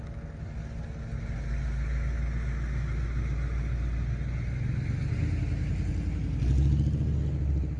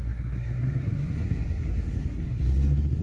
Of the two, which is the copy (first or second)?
second